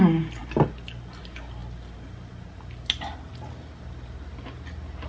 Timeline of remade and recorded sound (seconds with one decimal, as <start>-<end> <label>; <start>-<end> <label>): 0.0-5.1 recorded

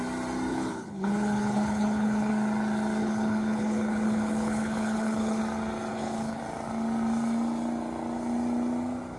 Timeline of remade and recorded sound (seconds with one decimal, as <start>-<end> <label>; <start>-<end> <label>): 0.0-0.5 recorded; 0.5-2.3 remade; 2.3-3.0 recorded; 3.0-5.4 remade; 5.4-5.9 recorded; 5.9-6.4 remade; 6.4-9.2 recorded

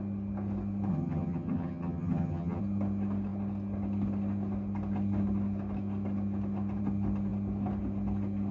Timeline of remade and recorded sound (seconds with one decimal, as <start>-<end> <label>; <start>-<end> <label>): 0.0-0.9 recorded; 0.9-2.6 remade; 2.6-8.5 recorded